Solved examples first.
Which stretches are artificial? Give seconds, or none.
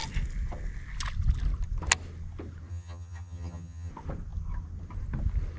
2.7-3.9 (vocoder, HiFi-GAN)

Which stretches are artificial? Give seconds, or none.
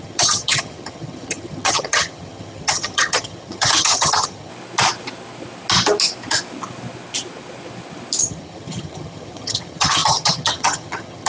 0.0-4.5 (vocoder, HiFi-GAN); 8.2-11.3